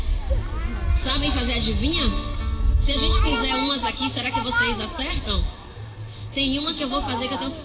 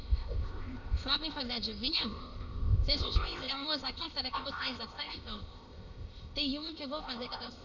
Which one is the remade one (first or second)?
second